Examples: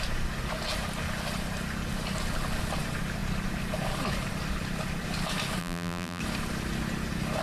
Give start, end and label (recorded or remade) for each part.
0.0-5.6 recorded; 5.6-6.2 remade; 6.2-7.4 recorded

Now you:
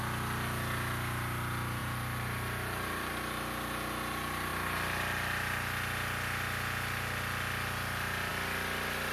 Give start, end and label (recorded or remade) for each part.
0.0-1.8 recorded; 1.8-3.1 remade; 3.1-9.1 recorded